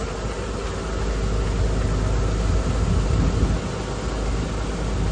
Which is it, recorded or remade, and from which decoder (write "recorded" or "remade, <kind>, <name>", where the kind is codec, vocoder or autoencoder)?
recorded